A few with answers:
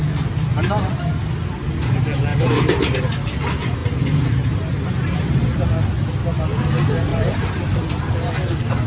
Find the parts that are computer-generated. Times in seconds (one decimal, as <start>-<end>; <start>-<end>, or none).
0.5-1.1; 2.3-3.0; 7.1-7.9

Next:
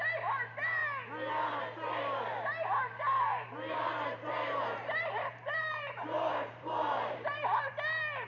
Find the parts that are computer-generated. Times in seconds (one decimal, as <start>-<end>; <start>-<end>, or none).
3.3-7.7

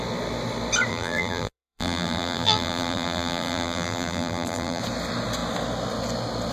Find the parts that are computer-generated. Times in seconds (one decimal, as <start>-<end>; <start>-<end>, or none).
0.9-4.8

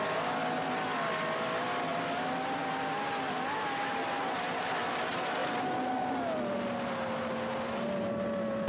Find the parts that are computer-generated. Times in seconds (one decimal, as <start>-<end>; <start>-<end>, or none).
1.9-2.6

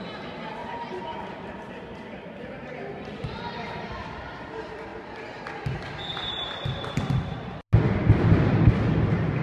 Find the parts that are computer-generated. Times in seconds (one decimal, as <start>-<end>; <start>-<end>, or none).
0.6-4.3

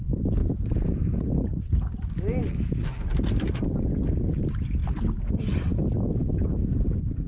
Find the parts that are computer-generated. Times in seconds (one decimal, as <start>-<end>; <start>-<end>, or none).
none

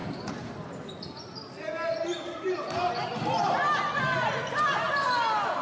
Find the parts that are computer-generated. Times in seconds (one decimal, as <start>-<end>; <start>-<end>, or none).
0.0-0.5; 1.9-2.5; 3.1-3.8

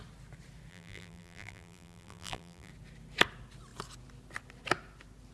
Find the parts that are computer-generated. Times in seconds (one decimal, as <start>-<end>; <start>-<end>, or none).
0.7-2.7